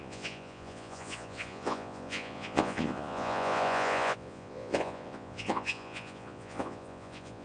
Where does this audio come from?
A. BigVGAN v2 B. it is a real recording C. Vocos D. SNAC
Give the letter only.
C